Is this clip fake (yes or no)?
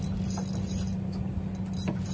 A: no